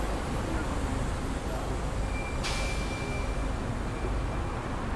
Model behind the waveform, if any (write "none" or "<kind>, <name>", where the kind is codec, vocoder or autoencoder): none